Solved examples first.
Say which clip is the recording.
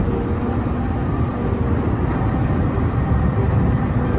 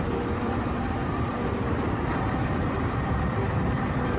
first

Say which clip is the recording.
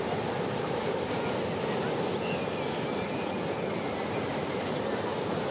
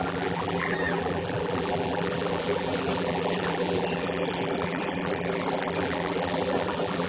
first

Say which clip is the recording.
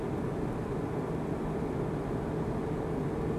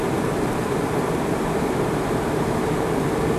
first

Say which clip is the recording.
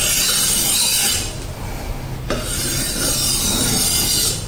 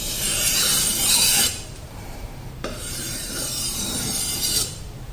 first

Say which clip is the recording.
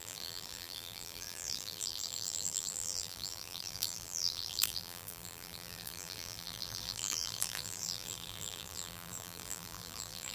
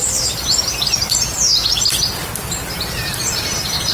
second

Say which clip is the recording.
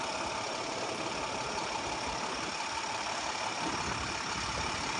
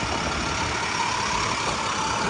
second